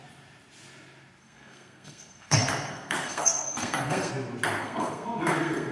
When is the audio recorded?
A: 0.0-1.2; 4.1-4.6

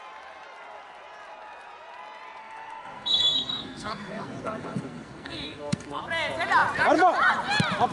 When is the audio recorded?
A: 0.0-2.4; 6.0-7.9

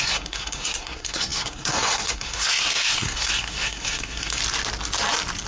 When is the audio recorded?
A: 4.4-5.5

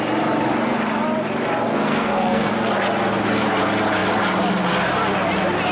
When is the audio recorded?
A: 0.0-1.7; 2.5-5.7

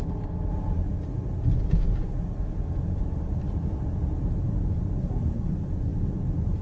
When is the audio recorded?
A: 0.0-5.0; 5.5-6.6

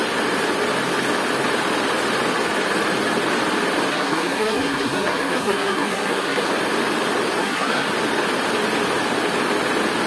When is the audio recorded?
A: 0.0-3.9; 6.5-7.4; 7.9-10.1

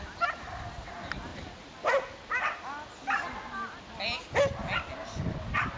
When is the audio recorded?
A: 0.0-5.8